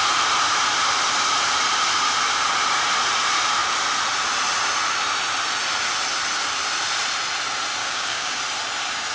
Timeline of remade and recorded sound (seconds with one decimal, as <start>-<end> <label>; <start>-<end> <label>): 0.0-7.8 recorded; 7.8-8.4 remade; 8.4-9.1 recorded